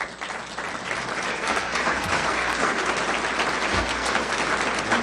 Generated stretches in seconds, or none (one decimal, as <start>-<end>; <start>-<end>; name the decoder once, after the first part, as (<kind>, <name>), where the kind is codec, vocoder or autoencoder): 1.3-2.9 (codec, SNAC); 3.7-4.3